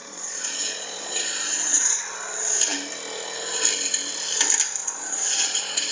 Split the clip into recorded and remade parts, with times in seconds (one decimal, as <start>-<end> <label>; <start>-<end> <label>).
0.0-2.0 remade; 2.0-4.8 recorded; 4.8-5.9 remade